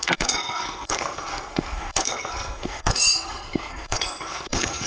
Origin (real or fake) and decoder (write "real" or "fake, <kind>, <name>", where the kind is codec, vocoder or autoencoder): fake, codec, SNAC